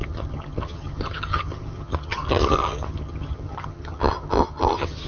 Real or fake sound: fake